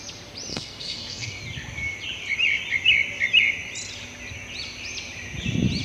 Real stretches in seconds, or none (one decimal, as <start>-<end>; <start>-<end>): 0.0-0.5; 1.4-5.8